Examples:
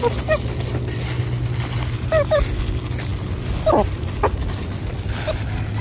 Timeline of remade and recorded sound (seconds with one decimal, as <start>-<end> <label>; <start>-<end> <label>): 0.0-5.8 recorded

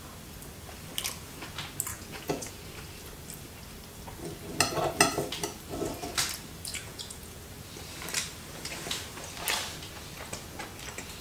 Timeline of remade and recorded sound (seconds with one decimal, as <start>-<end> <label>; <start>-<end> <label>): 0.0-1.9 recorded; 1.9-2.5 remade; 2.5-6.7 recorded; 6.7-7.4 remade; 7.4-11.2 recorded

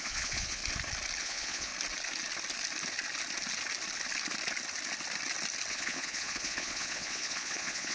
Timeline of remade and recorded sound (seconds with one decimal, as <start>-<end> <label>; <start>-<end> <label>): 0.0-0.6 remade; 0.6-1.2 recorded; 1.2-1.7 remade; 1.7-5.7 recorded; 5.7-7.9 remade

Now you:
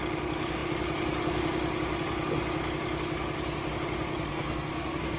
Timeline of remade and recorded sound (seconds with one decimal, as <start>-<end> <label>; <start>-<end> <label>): 0.0-4.3 recorded; 4.3-5.2 remade

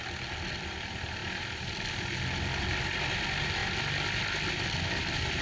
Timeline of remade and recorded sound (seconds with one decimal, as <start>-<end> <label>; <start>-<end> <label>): 0.0-5.4 recorded

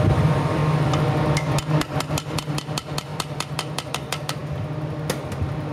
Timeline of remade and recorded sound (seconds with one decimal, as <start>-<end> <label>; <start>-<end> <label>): 0.0-0.6 remade; 0.6-2.1 recorded; 2.1-4.4 remade; 4.4-5.7 recorded